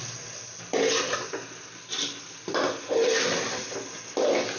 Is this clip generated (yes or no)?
no